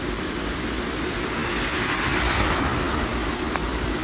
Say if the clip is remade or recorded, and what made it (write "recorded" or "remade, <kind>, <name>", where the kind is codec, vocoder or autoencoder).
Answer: recorded